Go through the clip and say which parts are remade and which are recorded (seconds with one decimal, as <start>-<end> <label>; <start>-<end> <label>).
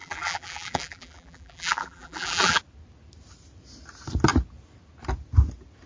0.0-2.6 remade; 2.6-5.9 recorded